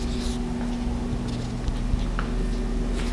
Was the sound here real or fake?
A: real